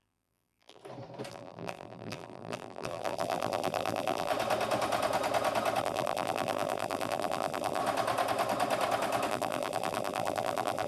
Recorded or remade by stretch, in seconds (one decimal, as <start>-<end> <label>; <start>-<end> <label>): 0.0-0.8 remade; 0.8-1.3 recorded; 1.3-4.3 remade; 4.3-5.8 recorded; 5.8-7.8 remade; 7.8-9.3 recorded; 9.3-10.9 remade